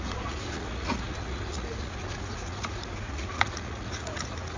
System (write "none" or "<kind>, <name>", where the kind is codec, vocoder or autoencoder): vocoder, Vocos